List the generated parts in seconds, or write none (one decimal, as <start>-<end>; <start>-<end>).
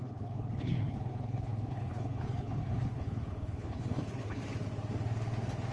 0.0-4.4